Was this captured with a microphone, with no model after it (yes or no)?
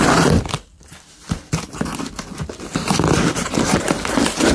no